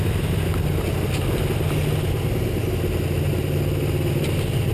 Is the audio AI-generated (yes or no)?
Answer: no